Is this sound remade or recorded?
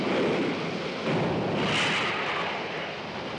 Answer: recorded